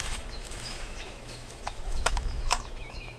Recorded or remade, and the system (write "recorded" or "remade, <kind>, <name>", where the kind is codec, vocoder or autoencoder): remade, autoencoder, DAC-VAE